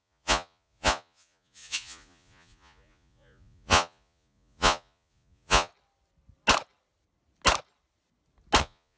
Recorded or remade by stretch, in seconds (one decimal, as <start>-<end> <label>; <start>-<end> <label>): 0.0-5.7 remade; 5.7-8.6 recorded; 8.6-9.0 remade